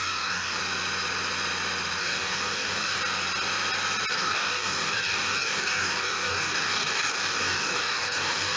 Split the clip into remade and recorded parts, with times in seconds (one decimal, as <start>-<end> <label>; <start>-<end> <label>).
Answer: 0.0-0.6 remade; 0.6-2.0 recorded; 2.0-3.0 remade; 3.0-4.1 recorded; 4.1-8.6 remade